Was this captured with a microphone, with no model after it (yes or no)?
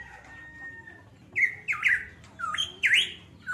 yes